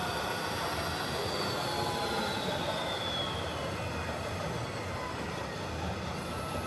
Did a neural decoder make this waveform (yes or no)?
no